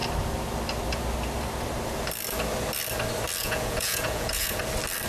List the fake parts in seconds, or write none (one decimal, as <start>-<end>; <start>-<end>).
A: 3.4-4.6

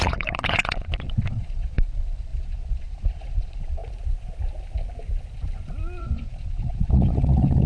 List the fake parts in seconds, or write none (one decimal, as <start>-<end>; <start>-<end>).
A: 0.0-3.8; 6.0-7.7

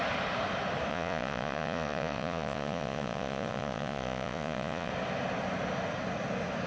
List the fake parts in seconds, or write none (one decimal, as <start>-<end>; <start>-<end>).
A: 0.9-4.9

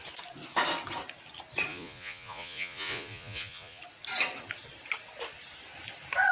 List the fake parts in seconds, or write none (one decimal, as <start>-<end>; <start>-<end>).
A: 1.7-3.8

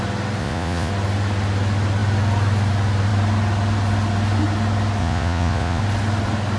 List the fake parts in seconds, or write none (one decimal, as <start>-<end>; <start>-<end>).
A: 0.4-0.9; 5.0-5.8

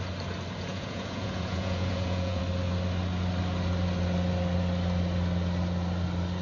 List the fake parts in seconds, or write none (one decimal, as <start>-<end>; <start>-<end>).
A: 0.7-2.4

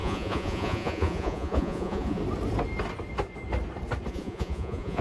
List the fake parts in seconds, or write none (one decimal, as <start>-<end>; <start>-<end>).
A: 0.0-2.2; 4.1-5.0